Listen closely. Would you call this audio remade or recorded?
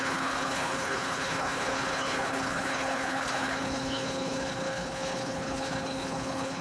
remade